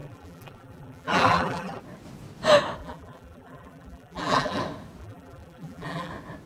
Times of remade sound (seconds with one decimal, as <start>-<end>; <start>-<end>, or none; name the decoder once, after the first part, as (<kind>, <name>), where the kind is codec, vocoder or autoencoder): 0.0-1.8 (vocoder, BigVGAN v2); 2.8-4.6; 5.0-6.1